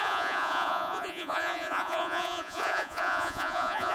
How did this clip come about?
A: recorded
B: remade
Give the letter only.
B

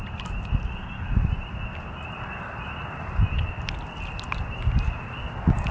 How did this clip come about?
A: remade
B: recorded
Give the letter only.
B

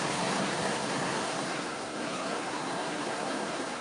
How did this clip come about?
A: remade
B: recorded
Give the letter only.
A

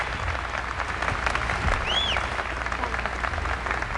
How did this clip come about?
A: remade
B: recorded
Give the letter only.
B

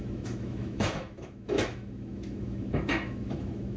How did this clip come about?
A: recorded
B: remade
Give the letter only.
B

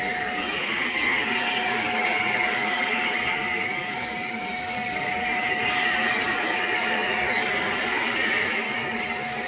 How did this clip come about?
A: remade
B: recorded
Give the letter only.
A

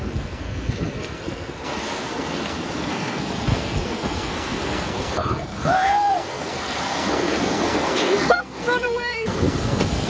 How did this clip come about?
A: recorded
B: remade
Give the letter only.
B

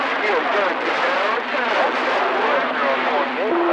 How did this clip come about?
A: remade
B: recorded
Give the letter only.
B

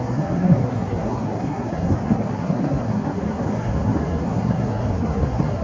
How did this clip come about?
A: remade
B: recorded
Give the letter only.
A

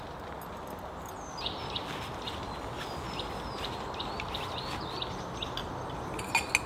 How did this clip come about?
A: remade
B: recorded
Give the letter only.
B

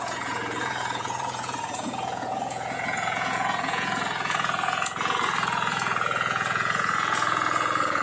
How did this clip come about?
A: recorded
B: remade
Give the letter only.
B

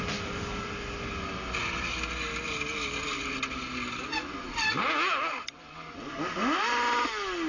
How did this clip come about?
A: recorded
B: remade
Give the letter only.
A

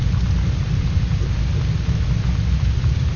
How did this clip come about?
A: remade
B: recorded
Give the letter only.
B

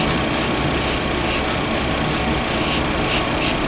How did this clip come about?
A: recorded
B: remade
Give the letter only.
A